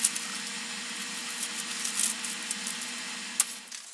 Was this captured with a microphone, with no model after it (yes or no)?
yes